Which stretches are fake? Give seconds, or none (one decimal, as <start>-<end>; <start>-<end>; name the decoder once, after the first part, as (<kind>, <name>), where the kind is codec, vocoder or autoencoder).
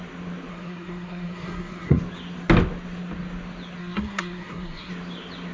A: 0.5-2.0 (codec, SNAC); 3.8-4.9